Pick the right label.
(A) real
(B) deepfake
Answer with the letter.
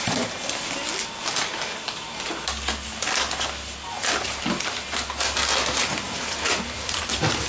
A